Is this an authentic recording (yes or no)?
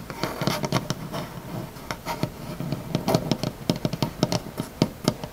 yes